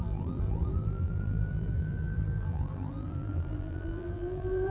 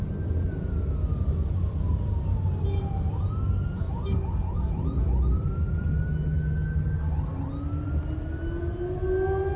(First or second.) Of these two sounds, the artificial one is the first